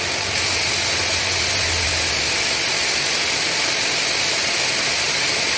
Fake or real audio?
real